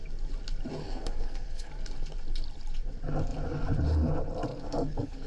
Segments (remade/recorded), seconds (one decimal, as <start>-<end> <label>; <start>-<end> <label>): 0.0-0.8 recorded; 0.8-1.7 remade; 1.7-4.5 recorded; 4.5-5.3 remade